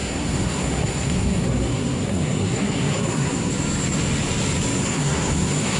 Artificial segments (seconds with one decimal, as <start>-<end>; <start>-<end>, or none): 0.0-3.5; 4.8-5.8